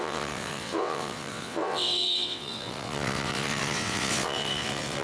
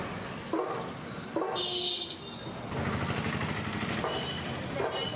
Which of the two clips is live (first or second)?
second